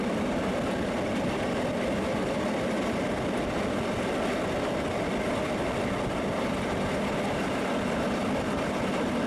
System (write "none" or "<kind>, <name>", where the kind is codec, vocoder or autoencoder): none